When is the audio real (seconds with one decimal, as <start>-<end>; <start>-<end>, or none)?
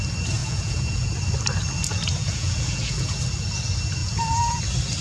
0.0-0.4; 1.1-1.9; 3.2-4.0; 4.6-5.0